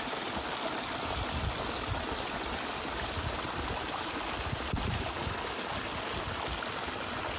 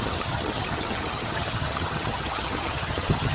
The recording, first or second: first